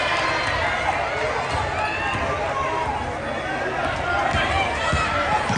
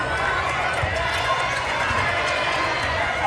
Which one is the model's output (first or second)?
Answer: second